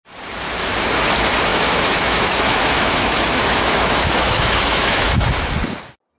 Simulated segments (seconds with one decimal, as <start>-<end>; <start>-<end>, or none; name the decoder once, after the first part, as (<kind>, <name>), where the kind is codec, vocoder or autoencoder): 1.5-5.2 (autoencoder, DAC-VAE)